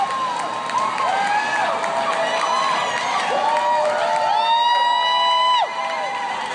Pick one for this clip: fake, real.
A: real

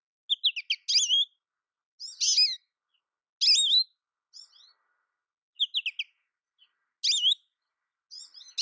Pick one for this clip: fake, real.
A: real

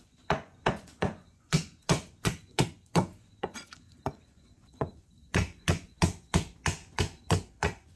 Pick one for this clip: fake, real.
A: fake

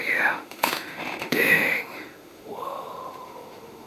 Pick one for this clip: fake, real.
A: fake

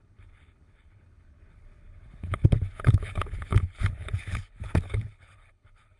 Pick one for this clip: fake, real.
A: fake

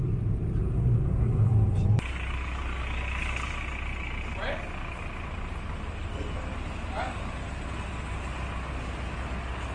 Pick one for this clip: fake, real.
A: real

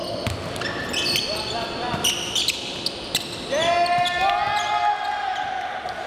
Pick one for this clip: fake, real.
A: real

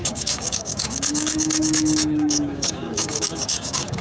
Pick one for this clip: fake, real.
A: fake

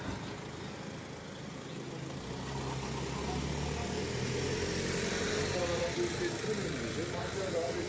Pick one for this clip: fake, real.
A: real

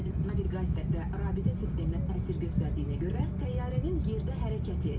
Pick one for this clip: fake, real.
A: real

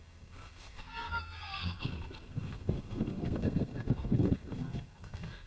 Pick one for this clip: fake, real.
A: fake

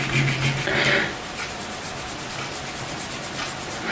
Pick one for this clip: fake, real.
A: real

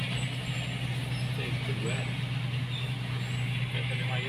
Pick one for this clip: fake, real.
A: real